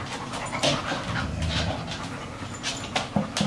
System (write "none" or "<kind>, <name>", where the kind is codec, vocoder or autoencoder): none